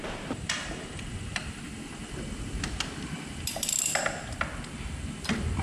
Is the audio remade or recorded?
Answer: remade